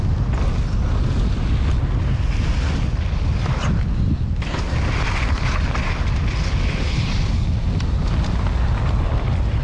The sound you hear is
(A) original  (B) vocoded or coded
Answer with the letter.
A